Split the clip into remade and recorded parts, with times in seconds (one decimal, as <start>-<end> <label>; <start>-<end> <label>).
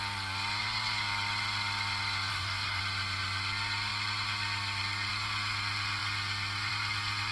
0.0-2.3 recorded; 2.3-2.8 remade; 2.8-7.3 recorded